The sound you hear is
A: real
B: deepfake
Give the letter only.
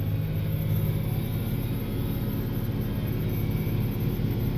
A